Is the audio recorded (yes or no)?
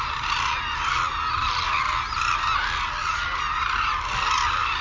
yes